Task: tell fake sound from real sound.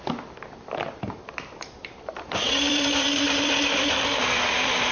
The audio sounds fake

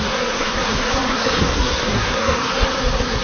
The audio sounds fake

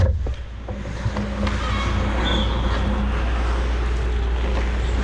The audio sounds real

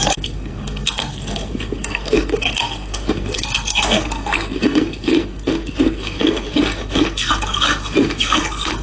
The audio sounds fake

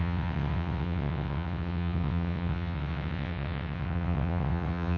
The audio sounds fake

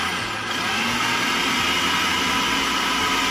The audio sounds real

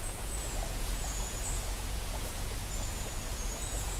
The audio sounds fake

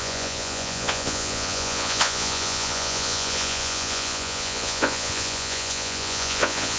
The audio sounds fake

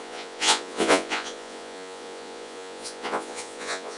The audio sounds fake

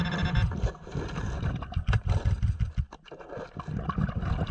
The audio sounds real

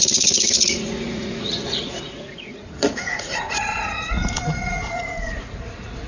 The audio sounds fake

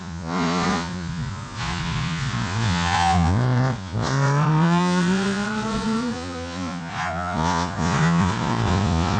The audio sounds fake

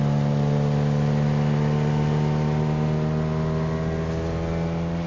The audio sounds real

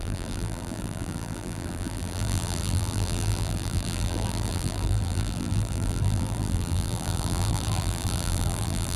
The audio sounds fake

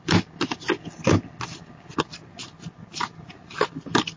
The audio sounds real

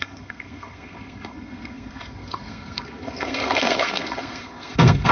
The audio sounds fake